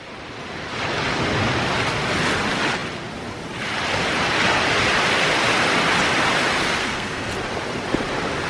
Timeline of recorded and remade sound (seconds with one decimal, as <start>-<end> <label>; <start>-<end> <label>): 0.0-6.8 recorded; 6.8-7.3 remade; 7.3-8.5 recorded